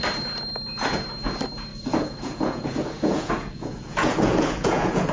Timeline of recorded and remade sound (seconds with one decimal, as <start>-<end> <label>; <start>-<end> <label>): 0.0-1.7 recorded; 1.7-5.1 remade